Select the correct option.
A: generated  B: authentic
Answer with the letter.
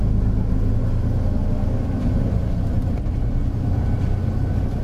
B